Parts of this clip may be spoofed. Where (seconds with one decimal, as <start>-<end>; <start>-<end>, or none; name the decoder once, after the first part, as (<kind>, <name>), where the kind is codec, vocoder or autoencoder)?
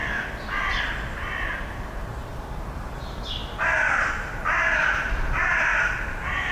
0.8-3.4 (vocoder, BigVGAN v2); 5.3-6.5